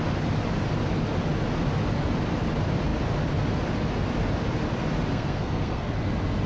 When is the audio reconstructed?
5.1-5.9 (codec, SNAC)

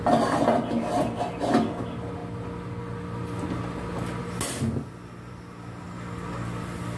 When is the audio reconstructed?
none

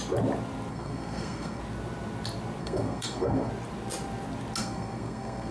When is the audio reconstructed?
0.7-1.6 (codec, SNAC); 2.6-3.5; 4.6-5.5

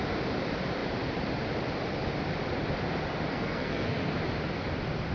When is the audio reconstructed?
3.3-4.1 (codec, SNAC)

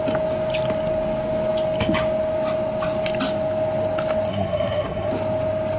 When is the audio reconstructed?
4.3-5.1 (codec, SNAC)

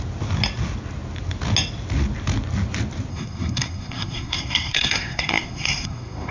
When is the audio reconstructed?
3.1-6.3 (codec, SNAC)